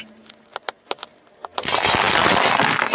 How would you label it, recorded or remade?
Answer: recorded